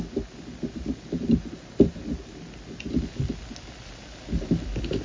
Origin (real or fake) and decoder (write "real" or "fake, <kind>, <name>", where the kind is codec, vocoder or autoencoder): real